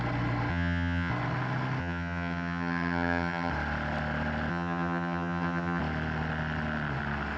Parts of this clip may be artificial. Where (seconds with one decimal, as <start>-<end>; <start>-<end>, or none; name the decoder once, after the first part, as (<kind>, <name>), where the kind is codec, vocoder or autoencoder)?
0.5-1.1 (vocoder, HiFi-GAN); 1.8-3.5; 4.5-5.8